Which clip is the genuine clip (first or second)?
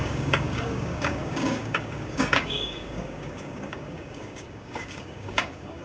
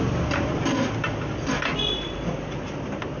second